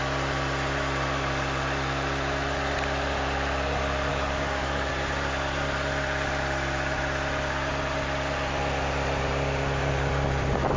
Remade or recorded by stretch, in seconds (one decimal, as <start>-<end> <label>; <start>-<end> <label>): 0.0-4.1 recorded; 4.1-4.9 remade; 4.9-10.8 recorded